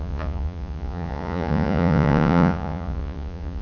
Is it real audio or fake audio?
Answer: fake